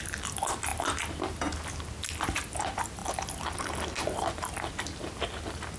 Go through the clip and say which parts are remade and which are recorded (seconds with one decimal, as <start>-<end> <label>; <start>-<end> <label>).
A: 0.0-5.8 recorded

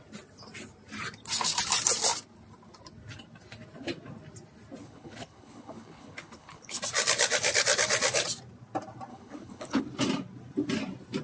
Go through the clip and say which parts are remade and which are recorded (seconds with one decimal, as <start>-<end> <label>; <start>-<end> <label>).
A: 0.0-4.8 recorded; 4.8-6.8 remade; 6.8-9.1 recorded; 9.1-9.8 remade; 9.8-11.2 recorded